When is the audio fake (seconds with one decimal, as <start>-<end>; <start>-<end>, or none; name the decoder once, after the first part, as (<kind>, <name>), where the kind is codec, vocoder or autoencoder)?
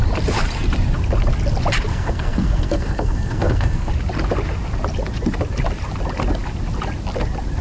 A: 1.9-3.9 (codec, SNAC)